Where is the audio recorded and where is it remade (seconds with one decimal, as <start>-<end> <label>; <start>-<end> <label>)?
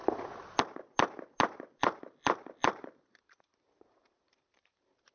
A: 0.0-1.8 recorded; 1.8-5.1 remade